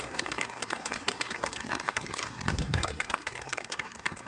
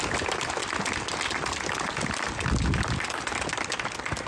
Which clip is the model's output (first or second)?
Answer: first